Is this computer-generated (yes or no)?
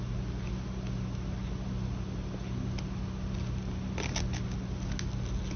no